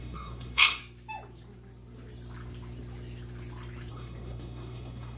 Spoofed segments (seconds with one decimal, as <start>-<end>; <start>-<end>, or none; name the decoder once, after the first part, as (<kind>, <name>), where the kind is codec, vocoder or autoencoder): 0.0-0.8 (codec, SNAC); 3.9-5.2